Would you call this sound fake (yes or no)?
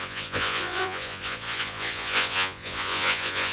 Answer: yes